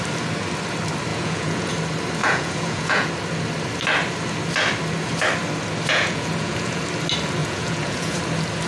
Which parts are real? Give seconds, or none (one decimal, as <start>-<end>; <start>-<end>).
0.0-1.1; 1.7-2.2; 3.1-5.9; 6.8-7.4; 8.2-8.7